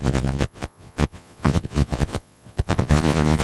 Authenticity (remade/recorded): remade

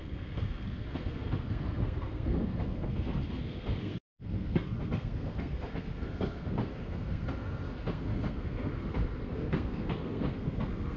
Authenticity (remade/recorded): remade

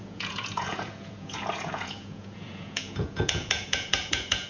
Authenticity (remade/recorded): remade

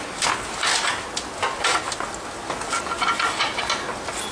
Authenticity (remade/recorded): recorded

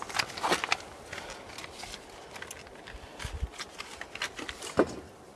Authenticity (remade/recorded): recorded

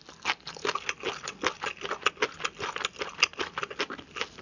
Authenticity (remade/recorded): recorded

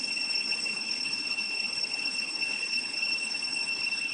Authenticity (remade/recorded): remade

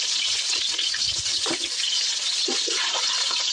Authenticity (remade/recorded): remade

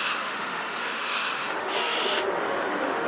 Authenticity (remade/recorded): remade